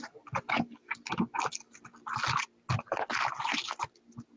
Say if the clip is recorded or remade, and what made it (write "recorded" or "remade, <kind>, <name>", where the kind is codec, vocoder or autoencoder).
recorded